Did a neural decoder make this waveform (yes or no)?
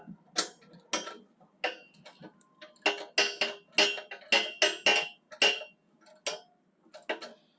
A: no